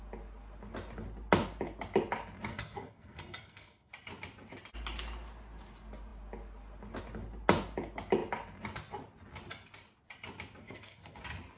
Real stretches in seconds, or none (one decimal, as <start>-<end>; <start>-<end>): 0.0-2.5; 3.9-10.6; 11.2-11.6